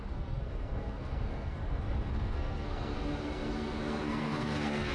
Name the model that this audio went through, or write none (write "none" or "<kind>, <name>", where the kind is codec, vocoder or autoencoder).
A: codec, SNAC